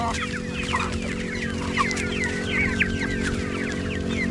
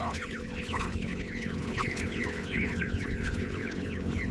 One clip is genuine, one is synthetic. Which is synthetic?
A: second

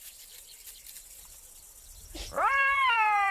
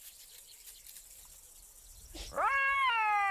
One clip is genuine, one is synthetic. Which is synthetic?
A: first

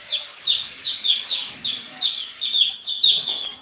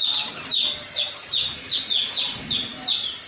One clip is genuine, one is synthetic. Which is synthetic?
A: first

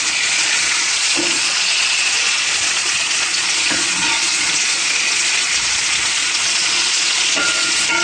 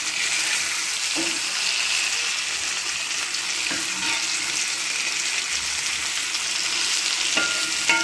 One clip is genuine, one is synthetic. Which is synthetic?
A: first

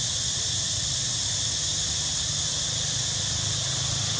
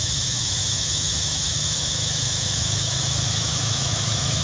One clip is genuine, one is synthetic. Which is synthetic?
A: second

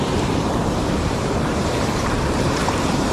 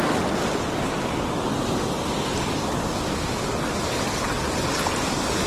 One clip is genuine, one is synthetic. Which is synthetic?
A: first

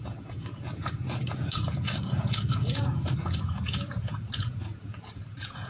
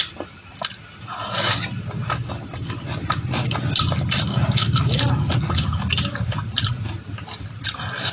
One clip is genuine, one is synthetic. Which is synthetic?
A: first